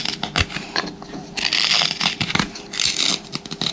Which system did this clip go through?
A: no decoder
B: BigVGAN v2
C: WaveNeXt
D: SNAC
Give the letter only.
B